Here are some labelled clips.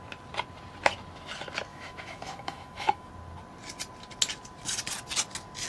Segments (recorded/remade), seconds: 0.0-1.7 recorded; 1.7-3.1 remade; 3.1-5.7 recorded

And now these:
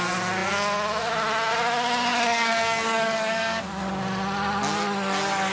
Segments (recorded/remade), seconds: 0.0-2.1 recorded; 2.1-3.9 remade; 3.9-5.5 recorded

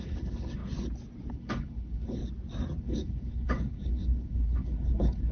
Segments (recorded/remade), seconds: 0.0-0.6 remade; 0.6-1.3 recorded; 1.3-2.2 remade; 2.2-2.8 recorded; 2.8-5.3 remade